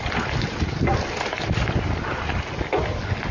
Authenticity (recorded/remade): recorded